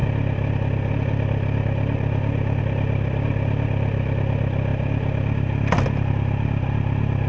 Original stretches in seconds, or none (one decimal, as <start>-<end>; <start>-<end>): 0.0-7.3